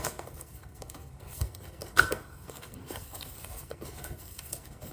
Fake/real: fake